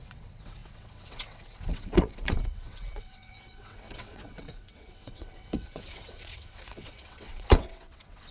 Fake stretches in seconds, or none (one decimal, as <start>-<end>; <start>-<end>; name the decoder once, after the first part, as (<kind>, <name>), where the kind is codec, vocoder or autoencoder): 0.0-8.3 (vocoder, WaveNeXt)